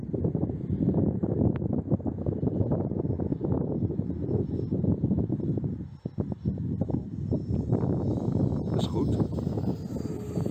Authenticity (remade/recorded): recorded